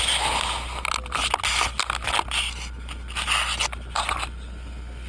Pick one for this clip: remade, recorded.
recorded